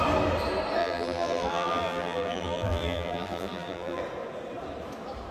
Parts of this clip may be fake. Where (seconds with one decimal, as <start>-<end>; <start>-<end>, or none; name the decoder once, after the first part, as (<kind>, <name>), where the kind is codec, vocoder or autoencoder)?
0.8-4.0 (vocoder, BigVGAN v2)